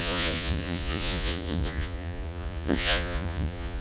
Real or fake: fake